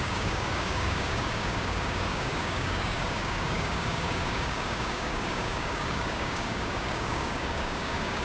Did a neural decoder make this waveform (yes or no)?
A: yes